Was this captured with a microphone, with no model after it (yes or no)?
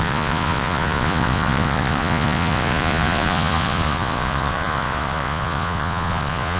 no